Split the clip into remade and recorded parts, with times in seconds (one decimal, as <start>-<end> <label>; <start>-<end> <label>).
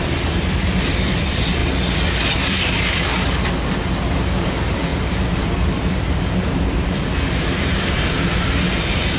0.0-1.6 remade; 1.6-2.3 recorded; 2.3-3.1 remade; 3.1-4.2 recorded; 4.2-9.2 remade